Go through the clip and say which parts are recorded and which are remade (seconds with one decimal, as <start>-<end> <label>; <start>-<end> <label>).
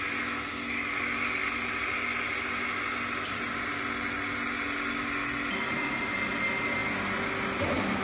0.0-8.0 recorded